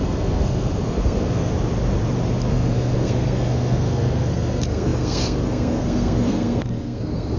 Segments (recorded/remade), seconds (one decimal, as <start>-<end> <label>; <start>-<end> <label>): 0.0-1.5 remade; 1.5-2.5 recorded; 2.5-7.4 remade